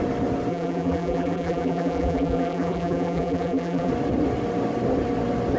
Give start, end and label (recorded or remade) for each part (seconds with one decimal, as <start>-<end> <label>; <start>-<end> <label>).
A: 0.0-0.5 recorded; 0.5-3.9 remade; 3.9-5.6 recorded